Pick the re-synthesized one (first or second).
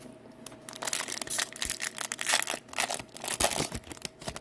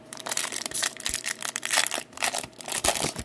second